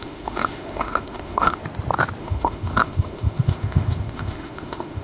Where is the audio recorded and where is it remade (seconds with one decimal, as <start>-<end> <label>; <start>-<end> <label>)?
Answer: 0.0-1.6 remade; 1.6-2.2 recorded; 2.2-5.0 remade

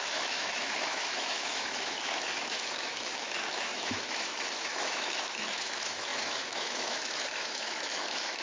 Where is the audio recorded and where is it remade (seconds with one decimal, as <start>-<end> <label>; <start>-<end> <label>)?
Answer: 0.0-8.4 remade

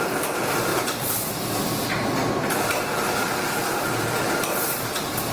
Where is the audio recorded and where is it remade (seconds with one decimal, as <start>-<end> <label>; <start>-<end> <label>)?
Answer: 0.0-5.3 recorded

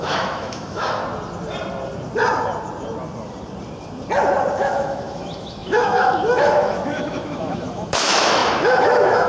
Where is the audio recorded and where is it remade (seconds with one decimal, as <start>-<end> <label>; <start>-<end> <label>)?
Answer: 0.0-1.0 remade; 1.0-4.5 recorded; 4.5-9.3 remade

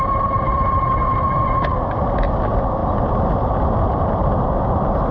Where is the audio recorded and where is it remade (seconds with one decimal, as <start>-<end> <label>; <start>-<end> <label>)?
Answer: 0.0-5.1 recorded